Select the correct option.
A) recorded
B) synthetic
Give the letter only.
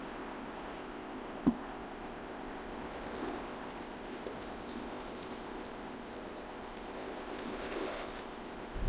B